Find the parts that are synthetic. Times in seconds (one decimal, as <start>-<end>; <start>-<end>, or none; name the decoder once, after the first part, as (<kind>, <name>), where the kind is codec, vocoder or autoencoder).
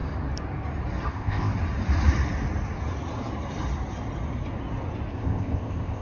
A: 1.1-1.5 (codec, ZipCodec); 5.1-6.0